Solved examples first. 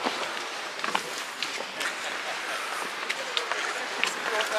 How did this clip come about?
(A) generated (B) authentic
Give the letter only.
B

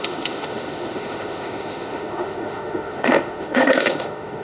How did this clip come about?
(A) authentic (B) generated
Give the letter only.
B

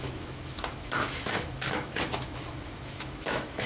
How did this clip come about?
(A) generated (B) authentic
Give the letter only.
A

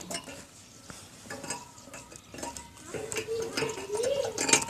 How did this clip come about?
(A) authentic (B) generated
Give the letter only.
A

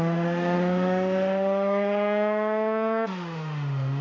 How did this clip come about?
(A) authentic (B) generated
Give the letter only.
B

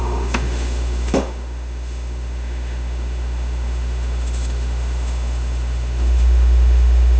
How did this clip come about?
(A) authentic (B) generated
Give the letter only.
B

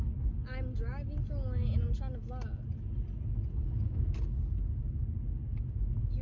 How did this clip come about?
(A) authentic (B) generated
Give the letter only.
A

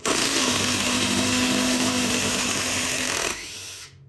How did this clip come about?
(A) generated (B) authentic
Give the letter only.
A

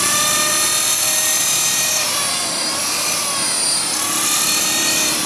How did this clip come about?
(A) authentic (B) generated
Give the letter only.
A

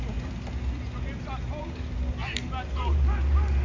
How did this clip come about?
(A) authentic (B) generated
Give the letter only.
A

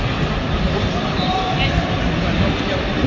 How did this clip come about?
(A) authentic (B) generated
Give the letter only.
A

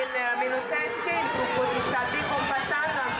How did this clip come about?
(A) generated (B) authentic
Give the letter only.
B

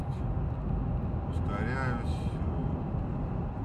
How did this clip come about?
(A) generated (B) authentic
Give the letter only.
B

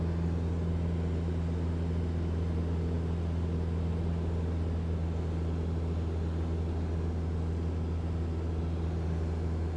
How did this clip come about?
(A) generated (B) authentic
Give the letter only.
B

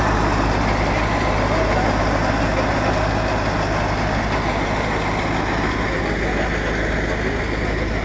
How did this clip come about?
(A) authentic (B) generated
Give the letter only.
A